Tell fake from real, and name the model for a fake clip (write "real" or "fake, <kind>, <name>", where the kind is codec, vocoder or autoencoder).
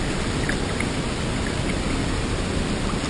real